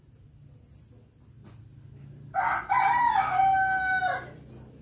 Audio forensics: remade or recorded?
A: recorded